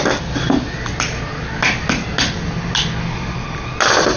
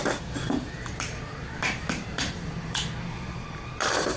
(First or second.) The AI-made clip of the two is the second